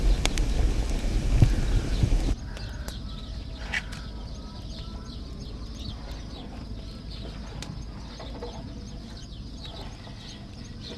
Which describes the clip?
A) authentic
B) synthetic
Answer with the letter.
A